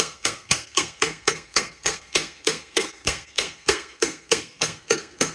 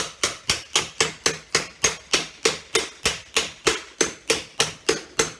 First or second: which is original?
second